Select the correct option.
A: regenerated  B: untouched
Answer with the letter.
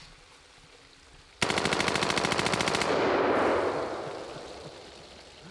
B